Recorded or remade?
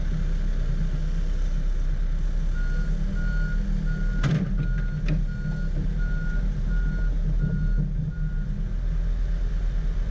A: recorded